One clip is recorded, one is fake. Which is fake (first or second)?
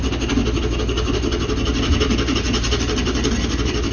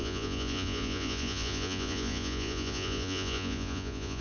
second